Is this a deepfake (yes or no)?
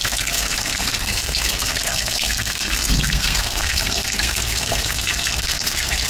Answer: yes